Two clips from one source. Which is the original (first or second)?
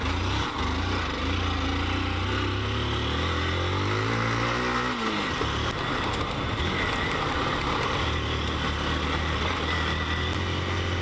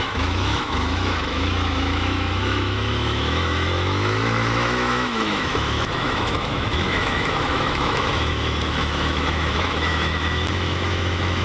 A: first